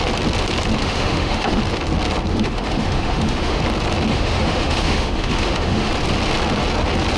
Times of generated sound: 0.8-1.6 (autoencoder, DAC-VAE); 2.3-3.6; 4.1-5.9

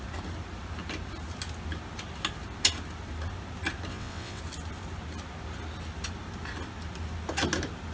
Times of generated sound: 3.9-4.4 (vocoder, WaveNeXt)

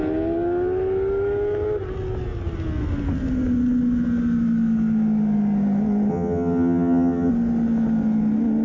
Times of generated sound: 6.1-7.3 (vocoder, HiFi-GAN)

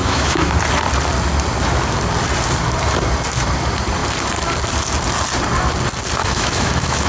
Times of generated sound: 0.0-0.5 (autoencoder, DAC-VAE); 6.2-7.1

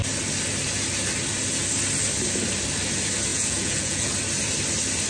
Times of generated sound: 3.3-4.1 (vocoder, Vocos)

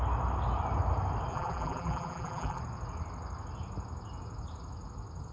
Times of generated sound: 1.3-2.6 (vocoder, BigVGAN v2)

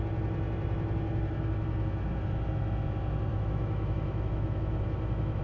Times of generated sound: 3.3-5.4 (autoencoder, DAC-VAE)

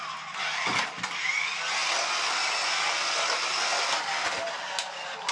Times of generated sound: none